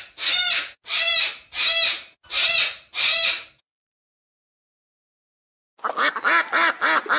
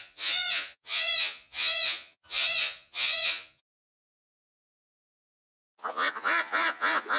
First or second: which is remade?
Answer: second